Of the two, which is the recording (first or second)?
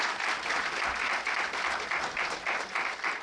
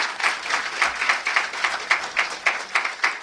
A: second